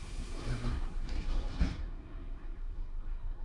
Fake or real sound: fake